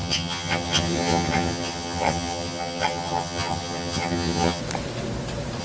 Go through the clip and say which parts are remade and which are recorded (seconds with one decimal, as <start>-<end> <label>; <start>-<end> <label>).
0.0-4.6 remade; 4.6-5.6 recorded